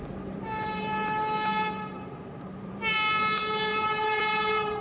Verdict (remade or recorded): remade